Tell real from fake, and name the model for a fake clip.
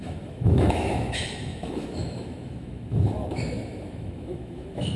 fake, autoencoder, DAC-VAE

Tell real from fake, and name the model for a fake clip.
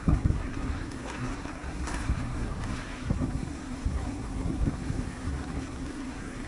fake, codec, SNAC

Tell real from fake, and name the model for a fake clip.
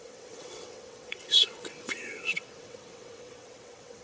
fake, vocoder, WaveNeXt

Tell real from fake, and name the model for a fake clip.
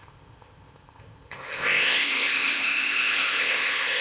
fake, codec, ZipCodec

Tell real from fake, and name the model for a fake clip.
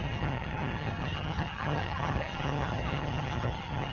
fake, vocoder, HiFi-GAN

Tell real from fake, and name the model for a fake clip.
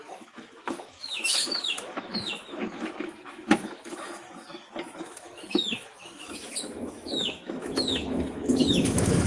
fake, autoencoder, DAC-VAE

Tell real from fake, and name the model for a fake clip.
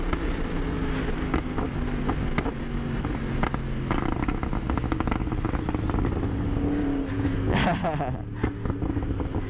real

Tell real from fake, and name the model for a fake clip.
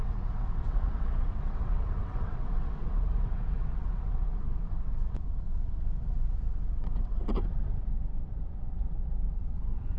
fake, vocoder, WaveNeXt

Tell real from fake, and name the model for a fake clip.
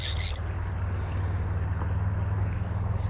real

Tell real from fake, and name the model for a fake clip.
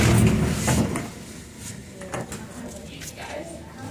real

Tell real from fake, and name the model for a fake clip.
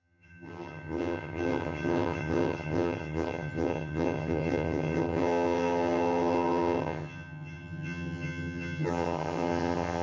fake, vocoder, HiFi-GAN